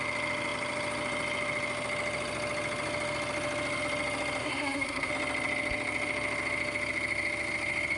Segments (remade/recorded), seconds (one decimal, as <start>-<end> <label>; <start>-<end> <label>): 0.0-4.4 recorded; 4.4-5.1 remade; 5.1-8.0 recorded